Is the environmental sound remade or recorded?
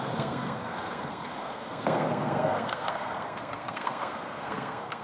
remade